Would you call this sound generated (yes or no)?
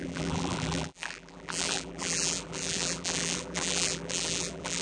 yes